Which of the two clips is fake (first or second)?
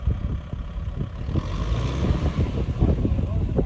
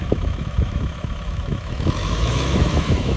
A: second